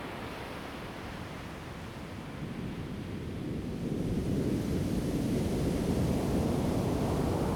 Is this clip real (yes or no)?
yes